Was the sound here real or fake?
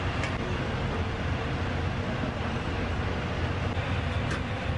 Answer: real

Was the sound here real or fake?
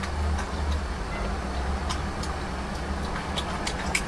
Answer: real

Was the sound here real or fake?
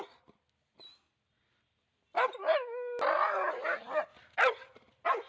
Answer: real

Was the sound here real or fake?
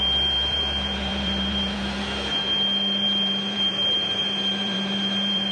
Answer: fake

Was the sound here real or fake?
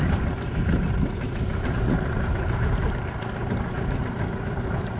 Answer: real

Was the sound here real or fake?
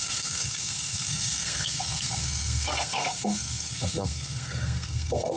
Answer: fake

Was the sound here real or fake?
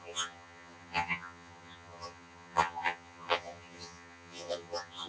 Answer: fake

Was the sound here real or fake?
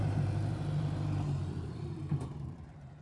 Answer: fake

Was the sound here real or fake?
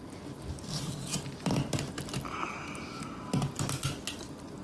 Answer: real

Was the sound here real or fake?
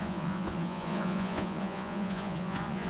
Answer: fake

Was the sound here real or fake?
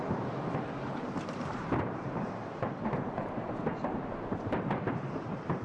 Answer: fake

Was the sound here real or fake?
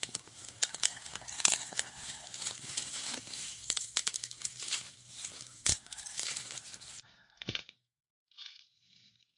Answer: fake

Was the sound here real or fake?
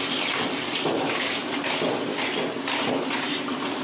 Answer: real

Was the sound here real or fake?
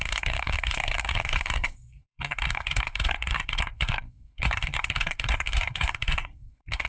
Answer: fake